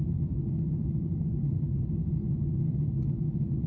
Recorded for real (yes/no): yes